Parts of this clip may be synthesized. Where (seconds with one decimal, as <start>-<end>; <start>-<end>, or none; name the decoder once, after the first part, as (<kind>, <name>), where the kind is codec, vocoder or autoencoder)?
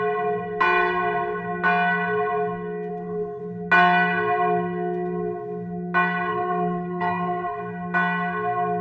2.9-3.4 (codec, SNAC); 6.3-7.6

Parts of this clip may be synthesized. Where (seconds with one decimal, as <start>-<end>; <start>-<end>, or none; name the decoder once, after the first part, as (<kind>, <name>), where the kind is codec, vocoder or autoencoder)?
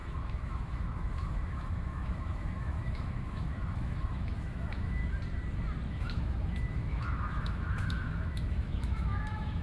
0.0-5.0 (autoencoder, DAC-VAE); 5.9-9.6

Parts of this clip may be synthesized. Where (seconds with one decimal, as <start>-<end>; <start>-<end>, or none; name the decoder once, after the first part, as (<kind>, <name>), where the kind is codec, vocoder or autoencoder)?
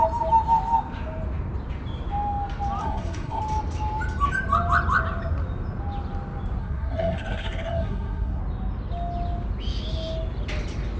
2.8-3.4 (codec, SNAC); 6.6-8.4